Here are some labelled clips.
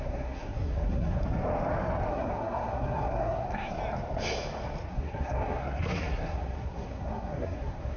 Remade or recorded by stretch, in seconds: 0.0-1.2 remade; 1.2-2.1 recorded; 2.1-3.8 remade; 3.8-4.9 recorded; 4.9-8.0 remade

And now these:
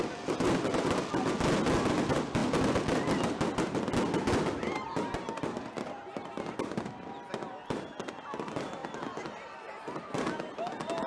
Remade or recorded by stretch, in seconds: 0.0-11.1 recorded

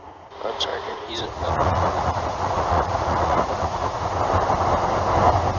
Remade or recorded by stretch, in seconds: 0.0-0.7 recorded; 0.7-4.1 remade; 4.1-5.6 recorded